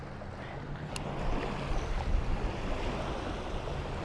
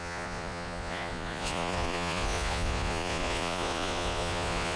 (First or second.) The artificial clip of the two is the second